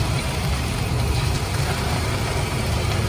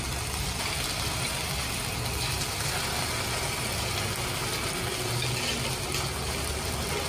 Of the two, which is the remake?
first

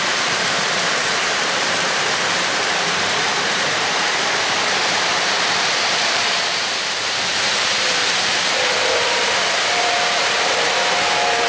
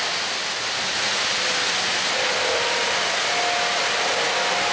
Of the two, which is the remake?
first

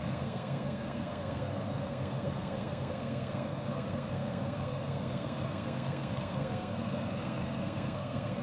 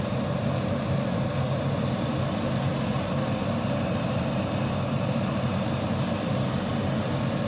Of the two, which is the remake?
first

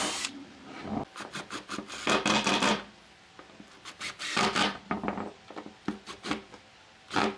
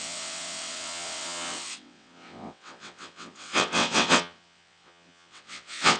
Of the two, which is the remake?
second